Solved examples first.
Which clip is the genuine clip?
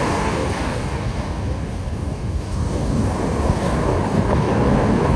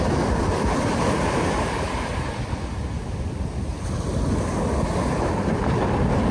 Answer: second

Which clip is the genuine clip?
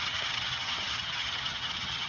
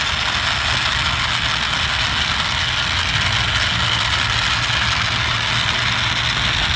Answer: second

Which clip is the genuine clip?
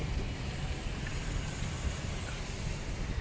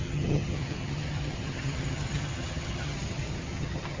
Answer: first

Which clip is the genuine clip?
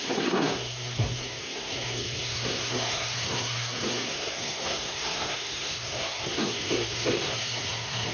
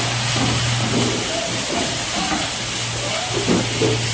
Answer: second